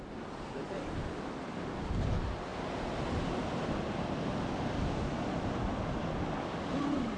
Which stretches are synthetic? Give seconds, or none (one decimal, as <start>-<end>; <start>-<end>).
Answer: none